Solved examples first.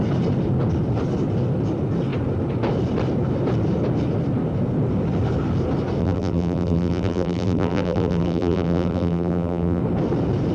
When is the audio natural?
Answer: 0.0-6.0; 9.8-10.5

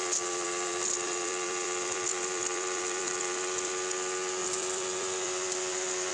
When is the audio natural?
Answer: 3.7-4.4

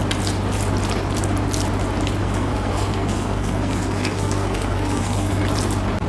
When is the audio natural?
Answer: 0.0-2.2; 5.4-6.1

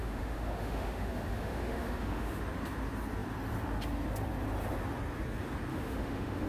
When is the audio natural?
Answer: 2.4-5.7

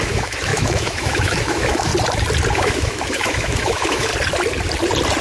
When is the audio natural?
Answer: 1.9-2.5; 4.1-5.2

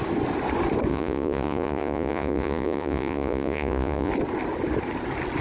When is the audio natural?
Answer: 0.0-0.9; 4.1-5.4